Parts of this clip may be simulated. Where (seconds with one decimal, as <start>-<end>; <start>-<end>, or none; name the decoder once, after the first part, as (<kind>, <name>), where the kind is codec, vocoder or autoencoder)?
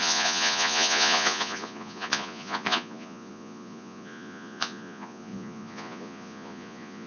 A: 0.0-7.1 (vocoder, Vocos)